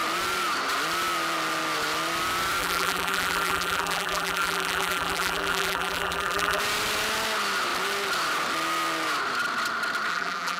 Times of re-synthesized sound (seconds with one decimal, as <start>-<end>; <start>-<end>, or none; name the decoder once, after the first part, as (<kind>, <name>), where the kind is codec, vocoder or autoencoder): 2.6-6.6 (vocoder, BigVGAN v2); 10.1-10.6